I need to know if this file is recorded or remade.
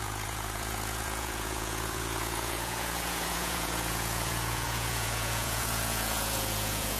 remade